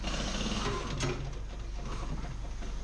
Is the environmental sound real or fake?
real